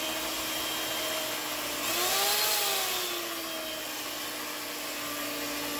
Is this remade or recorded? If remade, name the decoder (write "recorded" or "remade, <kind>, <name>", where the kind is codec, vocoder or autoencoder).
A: recorded